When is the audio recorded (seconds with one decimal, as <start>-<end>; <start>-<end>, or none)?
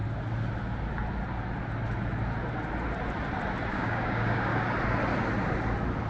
0.0-3.7; 4.5-6.1